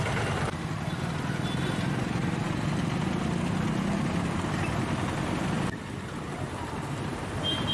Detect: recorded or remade recorded